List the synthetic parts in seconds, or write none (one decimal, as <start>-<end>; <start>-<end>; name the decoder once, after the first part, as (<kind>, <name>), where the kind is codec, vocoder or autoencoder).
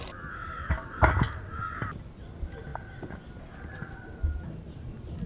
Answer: 0.4-1.1 (vocoder, BigVGAN v2)